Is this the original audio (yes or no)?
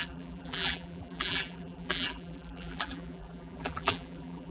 no